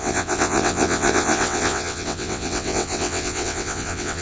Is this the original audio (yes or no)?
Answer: no